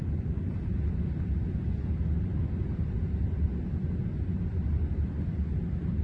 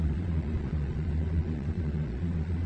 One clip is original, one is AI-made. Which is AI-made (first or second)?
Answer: second